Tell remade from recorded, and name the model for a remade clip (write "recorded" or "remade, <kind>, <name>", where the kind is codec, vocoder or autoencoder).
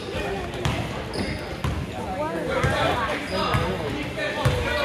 recorded